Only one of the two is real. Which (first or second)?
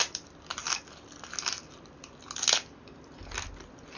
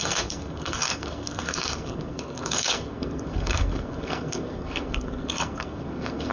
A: first